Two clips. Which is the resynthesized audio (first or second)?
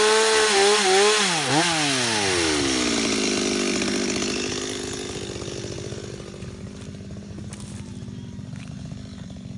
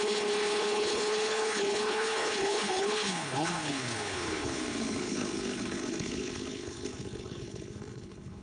second